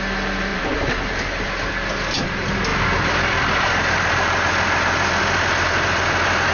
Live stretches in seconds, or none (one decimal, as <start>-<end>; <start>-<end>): 0.0-0.5; 1.7-2.7